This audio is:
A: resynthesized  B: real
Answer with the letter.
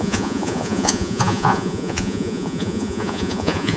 A